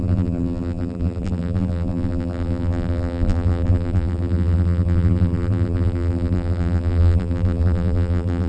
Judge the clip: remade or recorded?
remade